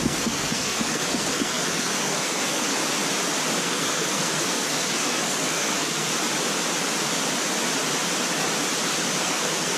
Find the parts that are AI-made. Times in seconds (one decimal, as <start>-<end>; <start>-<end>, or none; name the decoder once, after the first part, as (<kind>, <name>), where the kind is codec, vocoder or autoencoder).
0.0-2.8 (codec, SNAC); 3.6-6.1; 9.2-9.8

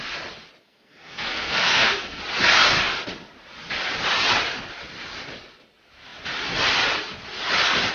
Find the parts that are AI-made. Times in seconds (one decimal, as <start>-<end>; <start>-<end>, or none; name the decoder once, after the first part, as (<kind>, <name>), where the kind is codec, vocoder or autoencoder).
0.6-2.2 (codec, SNAC)

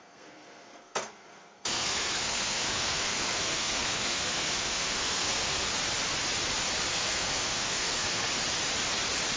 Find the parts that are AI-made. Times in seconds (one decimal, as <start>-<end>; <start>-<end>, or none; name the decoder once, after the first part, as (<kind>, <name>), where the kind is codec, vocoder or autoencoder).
0.0-5.7 (codec, SNAC); 6.9-8.3

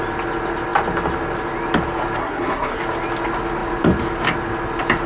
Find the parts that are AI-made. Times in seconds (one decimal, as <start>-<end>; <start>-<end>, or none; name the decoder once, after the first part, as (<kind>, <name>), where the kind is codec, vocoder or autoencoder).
2.2-2.8 (codec, SNAC)

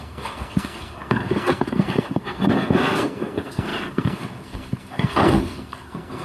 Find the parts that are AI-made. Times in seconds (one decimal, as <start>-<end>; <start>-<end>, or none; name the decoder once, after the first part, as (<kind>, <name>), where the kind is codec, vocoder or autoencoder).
0.0-6.2 (codec, SNAC)